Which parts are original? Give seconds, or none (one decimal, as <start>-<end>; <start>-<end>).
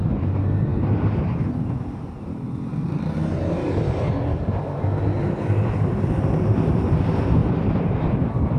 0.0-5.2; 6.5-7.4; 7.9-8.6